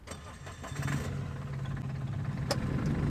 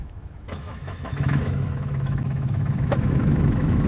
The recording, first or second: first